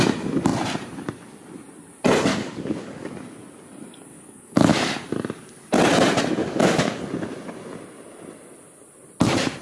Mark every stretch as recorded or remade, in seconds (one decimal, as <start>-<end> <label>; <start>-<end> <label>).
0.0-2.3 recorded; 2.3-3.1 remade; 3.1-4.1 recorded; 4.1-4.7 remade; 4.7-6.4 recorded; 6.4-7.0 remade; 7.0-9.6 recorded